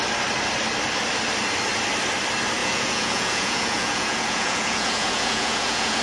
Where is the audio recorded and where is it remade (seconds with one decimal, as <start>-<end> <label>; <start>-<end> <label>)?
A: 0.0-2.6 recorded; 2.6-6.0 remade